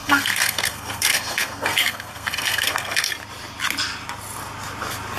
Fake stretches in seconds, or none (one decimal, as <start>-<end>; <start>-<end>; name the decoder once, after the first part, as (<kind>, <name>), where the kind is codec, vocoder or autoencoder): 0.0-3.1 (codec, SNAC)